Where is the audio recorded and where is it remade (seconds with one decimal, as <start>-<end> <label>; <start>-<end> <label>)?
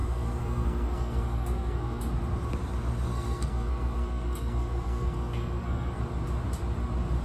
0.0-2.0 remade; 2.0-3.1 recorded; 3.1-6.0 remade; 6.0-7.2 recorded